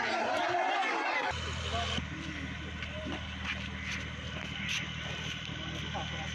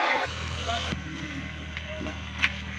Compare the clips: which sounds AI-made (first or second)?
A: second